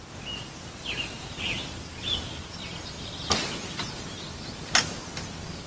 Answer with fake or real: real